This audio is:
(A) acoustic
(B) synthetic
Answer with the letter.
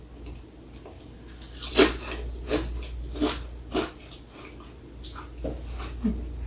A